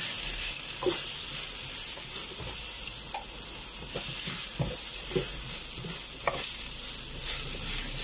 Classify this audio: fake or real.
real